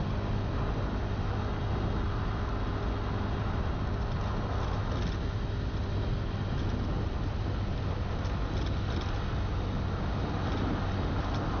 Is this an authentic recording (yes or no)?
yes